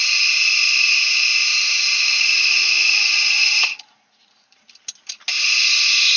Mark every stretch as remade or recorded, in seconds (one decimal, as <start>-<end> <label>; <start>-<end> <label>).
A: 0.0-0.9 recorded; 0.9-4.6 remade; 4.6-6.2 recorded